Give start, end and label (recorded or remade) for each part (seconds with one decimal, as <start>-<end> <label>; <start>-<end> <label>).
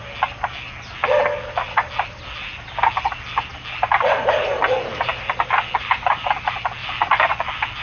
0.0-7.8 recorded